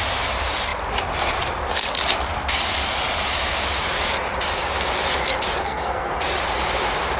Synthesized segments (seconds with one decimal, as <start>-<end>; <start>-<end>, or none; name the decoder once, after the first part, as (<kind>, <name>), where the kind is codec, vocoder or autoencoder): 5.6-6.1 (codec, SNAC)